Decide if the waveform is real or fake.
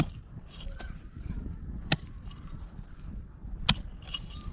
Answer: real